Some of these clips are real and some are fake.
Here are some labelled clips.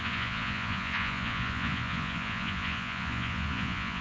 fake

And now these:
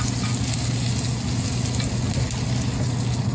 real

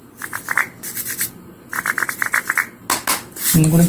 real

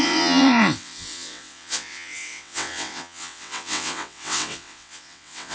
fake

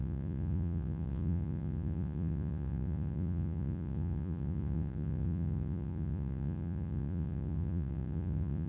fake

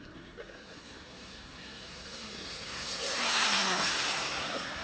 fake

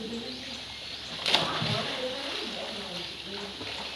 real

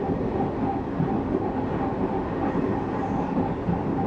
real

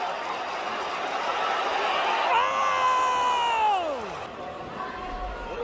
real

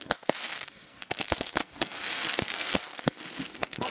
fake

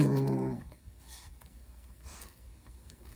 fake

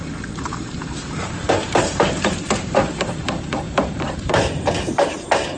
fake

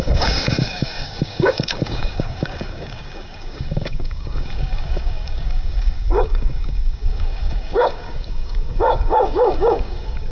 fake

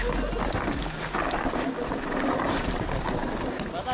real